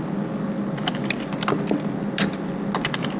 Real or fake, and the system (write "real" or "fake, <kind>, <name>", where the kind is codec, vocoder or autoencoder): real